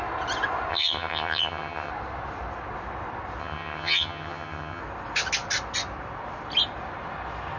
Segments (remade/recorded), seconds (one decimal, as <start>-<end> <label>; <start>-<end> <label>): 0.0-0.7 recorded; 0.7-1.9 remade; 1.9-3.4 recorded; 3.4-4.8 remade; 4.8-7.6 recorded